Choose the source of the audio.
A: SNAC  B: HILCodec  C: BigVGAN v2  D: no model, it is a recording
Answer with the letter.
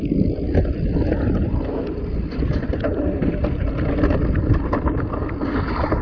D